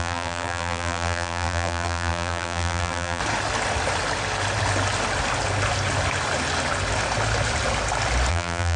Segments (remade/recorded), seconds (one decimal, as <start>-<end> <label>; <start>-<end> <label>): 0.0-3.2 remade; 3.2-8.3 recorded; 8.3-8.8 remade